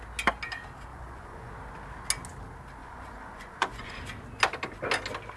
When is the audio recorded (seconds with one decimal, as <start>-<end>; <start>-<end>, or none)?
0.0-0.9; 1.5-2.8; 3.9-5.4